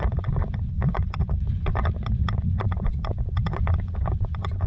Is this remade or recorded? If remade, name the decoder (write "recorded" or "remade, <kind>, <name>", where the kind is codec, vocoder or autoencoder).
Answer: remade, vocoder, Vocos